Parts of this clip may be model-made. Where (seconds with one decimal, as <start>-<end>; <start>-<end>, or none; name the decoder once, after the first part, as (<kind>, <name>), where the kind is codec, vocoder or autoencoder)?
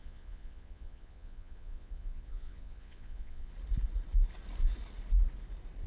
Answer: 0.0-3.5 (vocoder, Vocos)